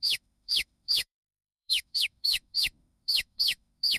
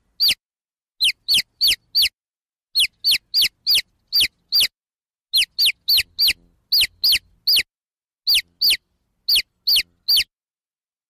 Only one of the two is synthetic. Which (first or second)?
first